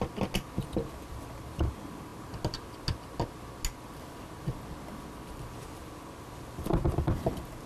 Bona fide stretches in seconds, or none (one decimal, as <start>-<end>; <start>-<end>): 0.0-7.7